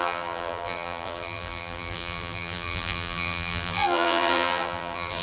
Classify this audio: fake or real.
fake